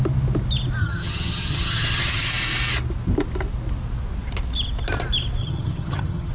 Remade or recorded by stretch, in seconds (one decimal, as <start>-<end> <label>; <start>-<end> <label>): 0.0-0.8 recorded; 0.8-2.3 remade; 2.3-5.4 recorded; 5.4-6.3 remade